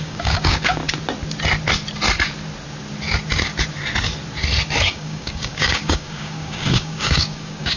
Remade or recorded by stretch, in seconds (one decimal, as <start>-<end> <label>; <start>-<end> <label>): 0.0-0.8 remade; 0.8-4.8 recorded; 4.8-7.8 remade

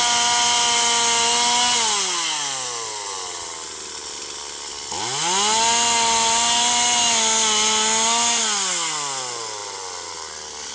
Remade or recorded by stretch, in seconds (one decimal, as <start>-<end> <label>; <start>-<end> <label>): 0.0-10.7 recorded

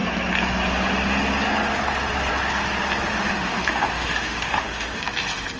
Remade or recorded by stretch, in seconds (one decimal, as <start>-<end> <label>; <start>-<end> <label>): 0.0-3.1 recorded; 3.1-5.0 remade; 5.0-5.6 recorded

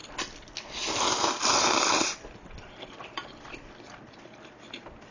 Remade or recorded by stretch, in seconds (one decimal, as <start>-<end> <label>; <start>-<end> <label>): 0.0-5.1 recorded

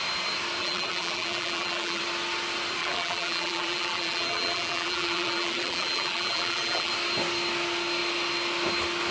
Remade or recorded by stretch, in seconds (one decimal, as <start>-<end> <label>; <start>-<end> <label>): 0.0-0.6 recorded; 0.6-2.0 remade; 2.0-2.8 recorded; 2.8-6.9 remade; 6.9-9.1 recorded

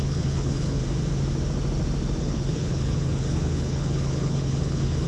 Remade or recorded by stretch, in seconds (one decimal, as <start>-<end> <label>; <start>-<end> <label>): 0.0-0.8 remade; 0.8-2.2 recorded; 2.2-5.1 remade